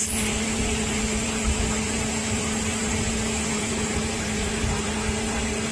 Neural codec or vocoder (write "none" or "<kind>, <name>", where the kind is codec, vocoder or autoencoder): vocoder, BigVGAN v2